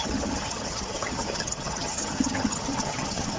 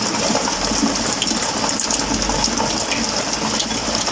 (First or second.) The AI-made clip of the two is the first